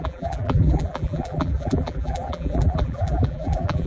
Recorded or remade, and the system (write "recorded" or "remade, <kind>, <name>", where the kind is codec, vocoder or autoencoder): remade, vocoder, BigVGAN v2